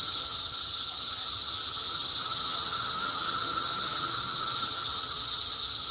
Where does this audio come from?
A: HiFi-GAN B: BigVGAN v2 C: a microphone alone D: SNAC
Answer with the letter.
A